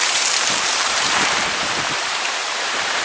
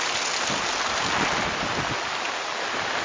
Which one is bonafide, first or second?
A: second